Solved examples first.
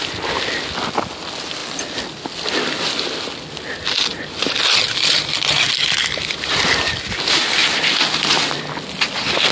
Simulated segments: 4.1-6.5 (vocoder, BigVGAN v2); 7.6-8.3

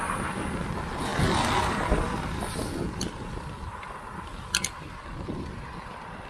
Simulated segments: none

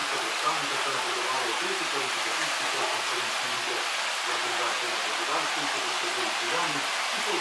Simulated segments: none

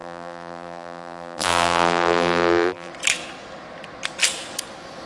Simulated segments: 0.0-2.9 (vocoder, BigVGAN v2)

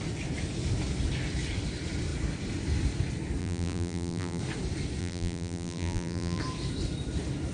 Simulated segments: 3.4-4.4 (vocoder, BigVGAN v2); 5.0-6.4

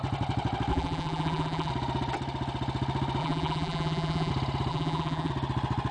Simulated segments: 0.7-1.7 (vocoder, BigVGAN v2); 3.2-4.3; 4.7-5.3